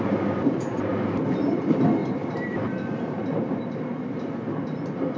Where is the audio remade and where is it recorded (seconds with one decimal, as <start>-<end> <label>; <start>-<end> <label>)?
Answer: 0.0-0.9 recorded; 0.9-1.5 remade; 1.5-2.0 recorded; 2.0-3.6 remade; 3.6-5.2 recorded